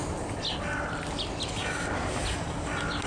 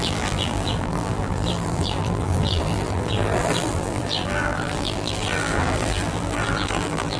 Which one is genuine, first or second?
first